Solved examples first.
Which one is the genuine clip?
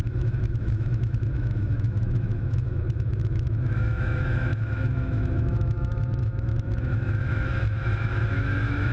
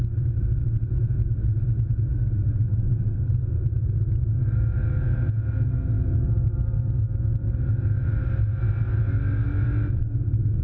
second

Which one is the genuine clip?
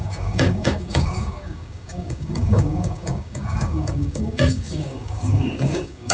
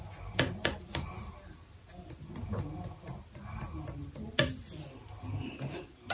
second